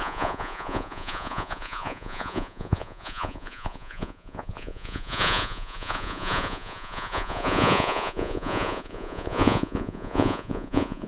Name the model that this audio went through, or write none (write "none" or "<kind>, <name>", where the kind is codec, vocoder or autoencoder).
vocoder, Vocos